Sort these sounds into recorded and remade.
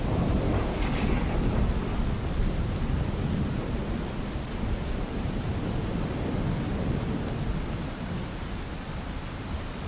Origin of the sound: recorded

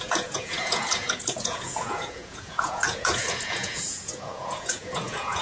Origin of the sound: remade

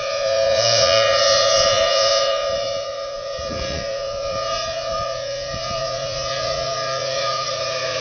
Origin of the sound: remade